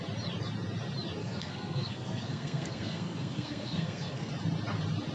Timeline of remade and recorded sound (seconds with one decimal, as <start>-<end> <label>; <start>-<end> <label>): 0.0-1.2 recorded; 1.2-4.3 remade; 4.3-5.1 recorded